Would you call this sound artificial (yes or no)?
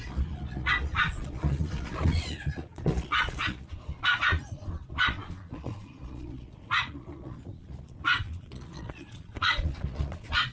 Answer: yes